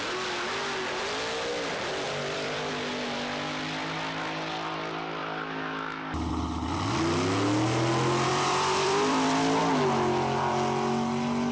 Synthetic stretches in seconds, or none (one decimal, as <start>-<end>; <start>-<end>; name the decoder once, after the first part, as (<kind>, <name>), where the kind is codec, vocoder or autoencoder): 1.5-2.7 (vocoder, BigVGAN v2); 8.3-9.6